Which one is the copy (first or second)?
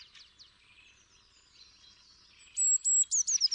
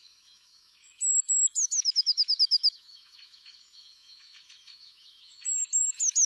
second